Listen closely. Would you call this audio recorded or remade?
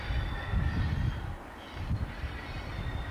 recorded